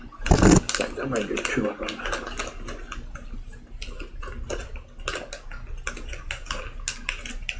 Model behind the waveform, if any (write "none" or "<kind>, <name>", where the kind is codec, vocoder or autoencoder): none